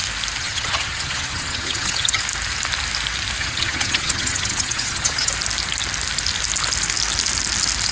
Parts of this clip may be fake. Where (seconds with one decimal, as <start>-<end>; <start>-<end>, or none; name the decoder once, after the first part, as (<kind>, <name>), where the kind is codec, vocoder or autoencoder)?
0.4-2.2 (vocoder, HiFi-GAN); 3.4-5.3